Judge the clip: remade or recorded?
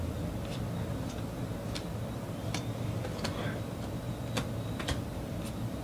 recorded